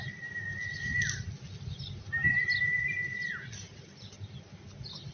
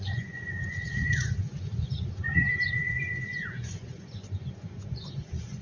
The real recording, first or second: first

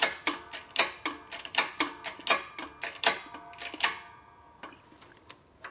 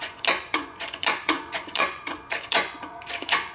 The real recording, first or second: first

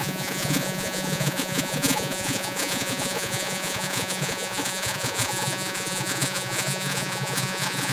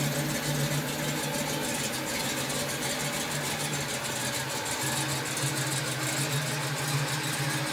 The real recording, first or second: second